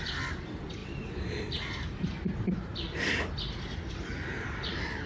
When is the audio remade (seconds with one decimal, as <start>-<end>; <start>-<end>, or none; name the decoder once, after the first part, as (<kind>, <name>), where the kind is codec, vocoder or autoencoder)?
0.0-5.1 (vocoder, BigVGAN v2)